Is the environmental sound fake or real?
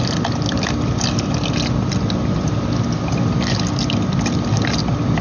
real